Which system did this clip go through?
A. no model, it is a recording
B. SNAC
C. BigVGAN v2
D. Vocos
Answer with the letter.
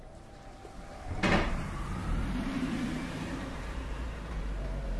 C